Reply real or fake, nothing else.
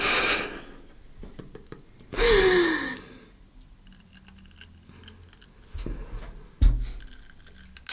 real